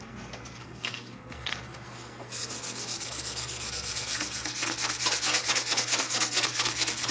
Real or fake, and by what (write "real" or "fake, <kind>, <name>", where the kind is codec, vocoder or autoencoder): fake, codec, SNAC